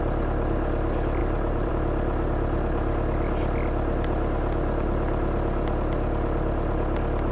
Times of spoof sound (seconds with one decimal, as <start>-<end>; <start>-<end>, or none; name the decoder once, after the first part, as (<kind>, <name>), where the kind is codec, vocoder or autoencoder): 1.2-1.7 (vocoder, BigVGAN v2)